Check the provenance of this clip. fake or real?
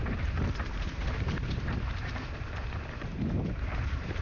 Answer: fake